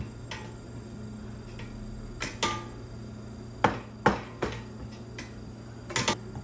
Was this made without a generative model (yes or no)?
yes